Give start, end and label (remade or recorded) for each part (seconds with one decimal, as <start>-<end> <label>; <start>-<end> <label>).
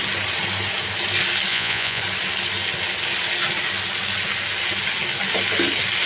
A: 0.0-1.5 recorded; 1.5-2.0 remade; 2.0-6.1 recorded